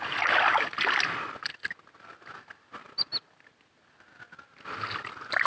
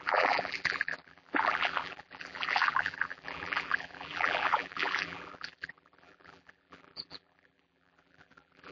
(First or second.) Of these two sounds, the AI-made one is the second